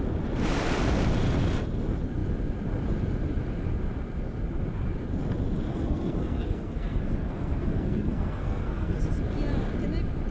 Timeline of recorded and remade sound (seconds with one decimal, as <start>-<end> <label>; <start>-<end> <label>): 0.0-5.7 recorded; 5.7-9.0 remade; 9.0-10.3 recorded